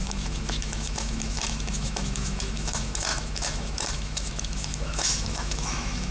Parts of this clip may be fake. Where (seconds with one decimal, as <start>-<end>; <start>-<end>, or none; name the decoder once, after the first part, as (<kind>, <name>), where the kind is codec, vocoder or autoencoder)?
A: 0.0-6.1 (autoencoder, DAC-VAE)